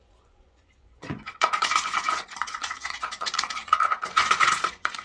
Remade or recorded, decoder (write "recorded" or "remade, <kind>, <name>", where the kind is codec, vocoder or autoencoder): remade, vocoder, Vocos